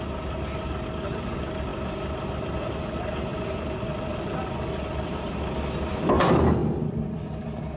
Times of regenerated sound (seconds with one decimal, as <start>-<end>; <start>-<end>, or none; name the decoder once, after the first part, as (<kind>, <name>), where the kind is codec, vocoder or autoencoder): 3.3-5.7 (vocoder, BigVGAN v2); 6.6-7.8